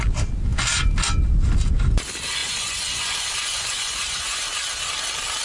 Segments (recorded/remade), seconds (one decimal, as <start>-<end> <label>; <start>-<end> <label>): 0.0-2.4 recorded; 2.4-4.4 remade; 4.4-5.4 recorded